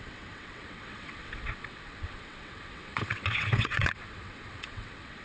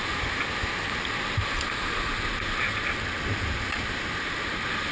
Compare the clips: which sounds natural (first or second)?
second